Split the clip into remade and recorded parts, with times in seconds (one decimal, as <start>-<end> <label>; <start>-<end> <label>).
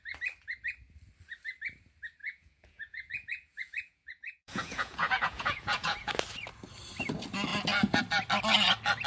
0.0-2.2 recorded; 2.2-6.1 remade; 6.1-9.1 recorded